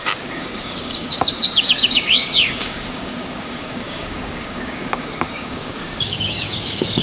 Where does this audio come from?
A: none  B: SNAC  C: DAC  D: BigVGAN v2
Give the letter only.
C